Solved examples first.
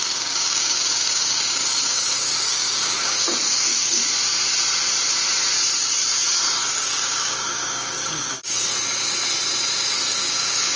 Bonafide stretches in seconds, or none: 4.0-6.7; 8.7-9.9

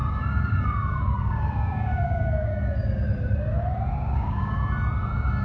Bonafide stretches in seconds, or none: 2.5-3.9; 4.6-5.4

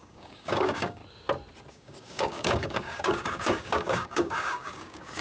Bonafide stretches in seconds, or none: 1.0-1.7